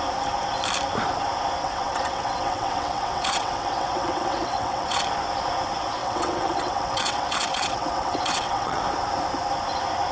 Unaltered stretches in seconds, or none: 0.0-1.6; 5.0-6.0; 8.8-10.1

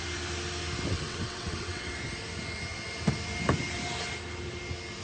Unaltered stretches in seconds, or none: 0.0-0.9; 1.9-5.0

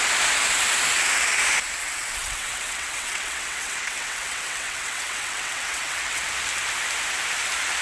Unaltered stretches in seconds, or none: 0.0-1.8; 6.3-7.8

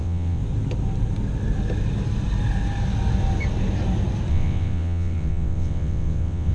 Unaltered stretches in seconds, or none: 0.4-4.3